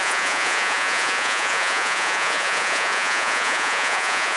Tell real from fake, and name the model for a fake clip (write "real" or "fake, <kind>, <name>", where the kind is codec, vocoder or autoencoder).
fake, vocoder, Vocos